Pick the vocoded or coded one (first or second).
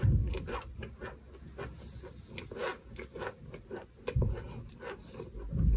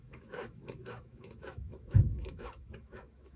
second